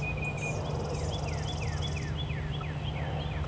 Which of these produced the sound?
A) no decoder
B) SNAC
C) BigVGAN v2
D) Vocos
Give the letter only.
A